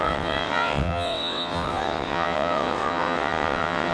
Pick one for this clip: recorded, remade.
remade